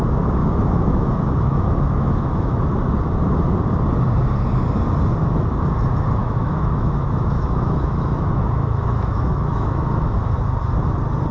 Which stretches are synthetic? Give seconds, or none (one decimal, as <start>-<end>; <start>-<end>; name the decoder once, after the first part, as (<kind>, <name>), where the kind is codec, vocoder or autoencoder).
0.4-2.7 (autoencoder, DAC-VAE); 6.2-10.2